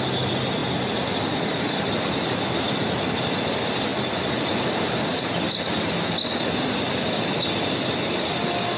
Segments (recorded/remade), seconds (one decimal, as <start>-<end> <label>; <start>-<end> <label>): 0.0-8.8 recorded